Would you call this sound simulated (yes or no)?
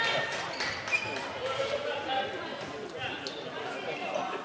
no